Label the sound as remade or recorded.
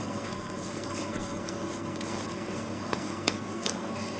remade